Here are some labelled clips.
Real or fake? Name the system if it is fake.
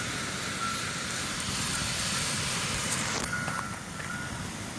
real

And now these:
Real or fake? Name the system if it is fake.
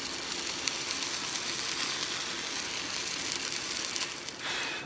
real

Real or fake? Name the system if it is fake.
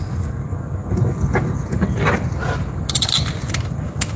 real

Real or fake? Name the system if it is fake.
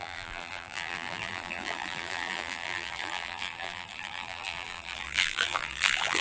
fake, vocoder, BigVGAN v2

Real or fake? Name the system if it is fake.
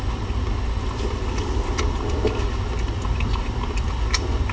real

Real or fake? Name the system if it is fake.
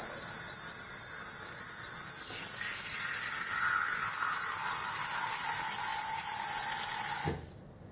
real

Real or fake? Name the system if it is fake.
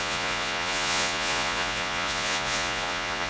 fake, vocoder, Vocos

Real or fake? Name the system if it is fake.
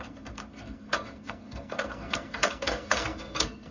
fake, codec, SNAC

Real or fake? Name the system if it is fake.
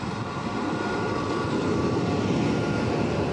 real